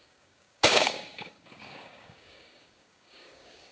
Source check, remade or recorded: remade